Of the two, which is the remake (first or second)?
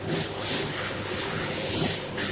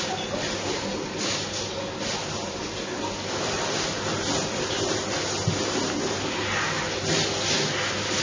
first